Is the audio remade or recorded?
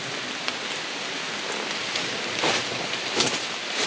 recorded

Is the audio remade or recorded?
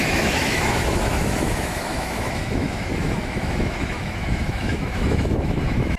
remade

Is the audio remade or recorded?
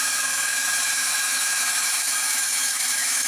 remade